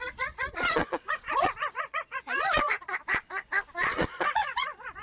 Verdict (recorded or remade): remade